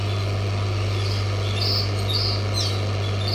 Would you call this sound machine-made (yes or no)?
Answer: no